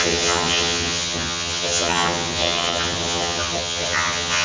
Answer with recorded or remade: remade